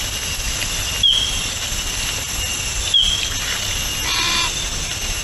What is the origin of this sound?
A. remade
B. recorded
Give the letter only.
B